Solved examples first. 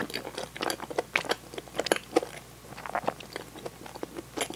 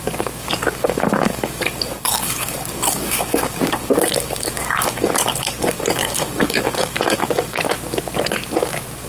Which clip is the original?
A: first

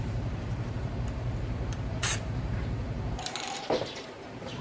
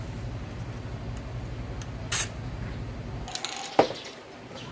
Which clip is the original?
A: second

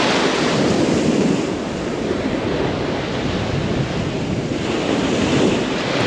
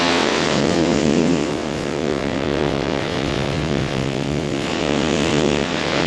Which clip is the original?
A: first